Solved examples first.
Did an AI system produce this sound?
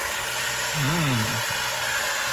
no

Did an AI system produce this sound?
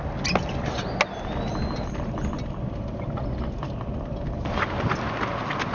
no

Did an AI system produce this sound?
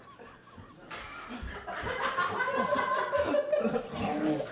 no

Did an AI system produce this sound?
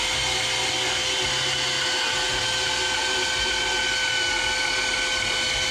no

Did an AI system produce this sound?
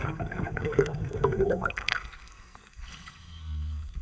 yes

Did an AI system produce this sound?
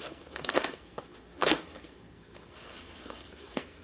yes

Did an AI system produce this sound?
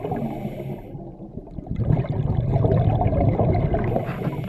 no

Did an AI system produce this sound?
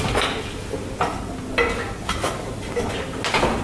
no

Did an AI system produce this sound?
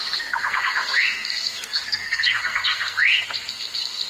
yes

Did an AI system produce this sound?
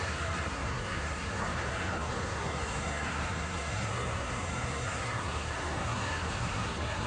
yes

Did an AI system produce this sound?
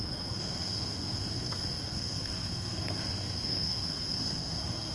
yes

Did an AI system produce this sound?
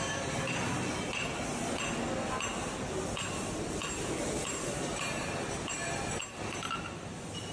no